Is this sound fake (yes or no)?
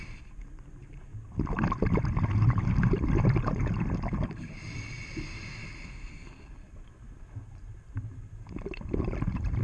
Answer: no